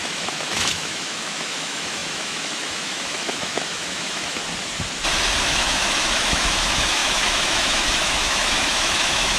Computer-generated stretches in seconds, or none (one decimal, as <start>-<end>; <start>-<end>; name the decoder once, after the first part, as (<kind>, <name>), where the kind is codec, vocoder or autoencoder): 0.0-4.4 (autoencoder, DAC-VAE); 5.4-9.4